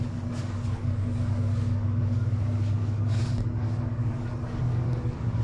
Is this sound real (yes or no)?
no